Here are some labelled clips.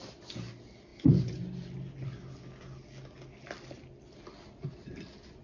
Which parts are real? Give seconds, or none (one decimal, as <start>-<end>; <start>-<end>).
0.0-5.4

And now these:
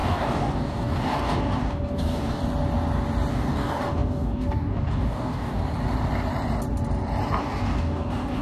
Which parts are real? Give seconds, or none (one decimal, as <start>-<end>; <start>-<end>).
2.4-3.3; 5.6-7.4

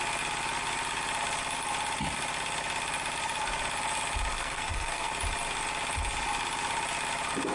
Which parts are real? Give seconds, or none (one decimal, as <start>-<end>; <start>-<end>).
0.0-4.3; 5.1-7.5